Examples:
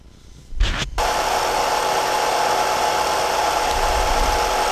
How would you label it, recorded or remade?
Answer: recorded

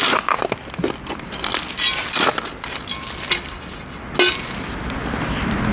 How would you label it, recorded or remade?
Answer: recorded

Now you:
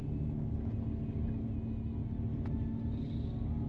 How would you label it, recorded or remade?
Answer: recorded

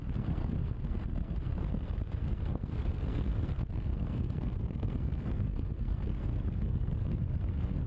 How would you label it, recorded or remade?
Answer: remade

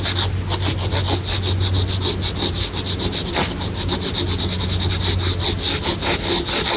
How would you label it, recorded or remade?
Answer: recorded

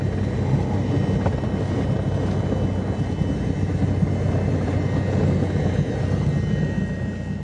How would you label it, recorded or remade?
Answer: recorded